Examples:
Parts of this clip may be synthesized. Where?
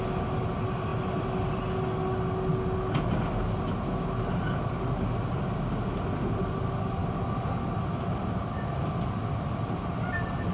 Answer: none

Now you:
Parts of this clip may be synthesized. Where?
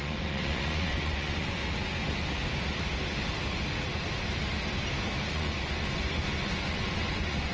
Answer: 0.0-1.6 (vocoder, Vocos); 5.3-7.5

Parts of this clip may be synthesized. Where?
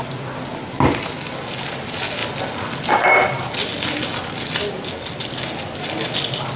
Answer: none